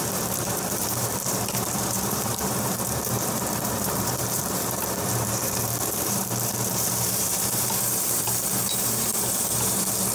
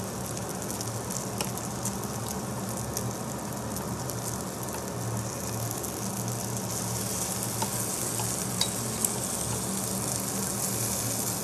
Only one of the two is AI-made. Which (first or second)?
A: first